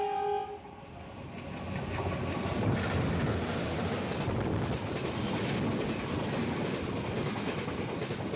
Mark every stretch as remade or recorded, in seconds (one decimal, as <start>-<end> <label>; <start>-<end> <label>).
0.0-8.4 recorded

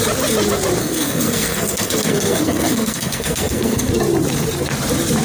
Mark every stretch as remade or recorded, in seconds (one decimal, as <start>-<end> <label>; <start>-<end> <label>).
0.0-0.8 recorded; 0.8-3.9 remade; 3.9-5.2 recorded

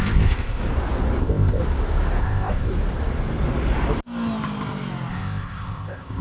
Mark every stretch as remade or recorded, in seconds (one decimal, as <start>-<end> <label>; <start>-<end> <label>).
0.0-0.6 remade; 0.6-1.2 recorded; 1.2-1.6 remade; 1.6-2.2 recorded; 2.2-2.7 remade; 2.7-5.1 recorded; 5.1-6.2 remade